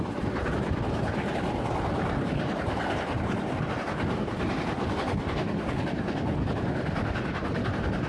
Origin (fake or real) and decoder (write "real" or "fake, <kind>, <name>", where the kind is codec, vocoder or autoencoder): real